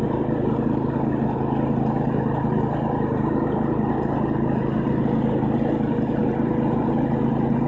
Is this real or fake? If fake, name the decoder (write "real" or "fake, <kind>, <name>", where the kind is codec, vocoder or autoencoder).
real